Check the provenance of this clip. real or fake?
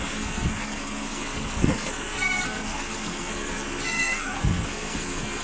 fake